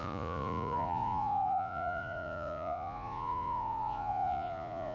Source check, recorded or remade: remade